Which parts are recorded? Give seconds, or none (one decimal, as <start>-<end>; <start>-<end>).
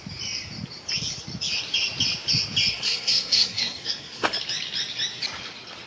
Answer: 0.0-2.7; 4.3-5.9